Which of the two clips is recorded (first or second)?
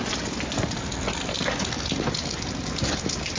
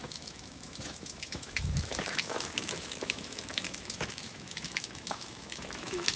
first